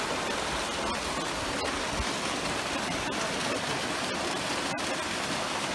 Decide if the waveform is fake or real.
real